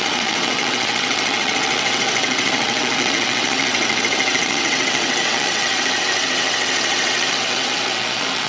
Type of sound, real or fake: fake